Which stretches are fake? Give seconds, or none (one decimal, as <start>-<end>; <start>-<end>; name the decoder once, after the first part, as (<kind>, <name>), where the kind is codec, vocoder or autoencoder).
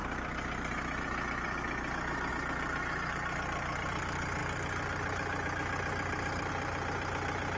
0.0-2.3 (vocoder, BigVGAN v2)